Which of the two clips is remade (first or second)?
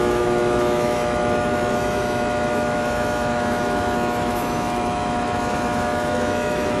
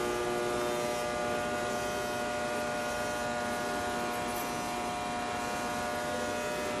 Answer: first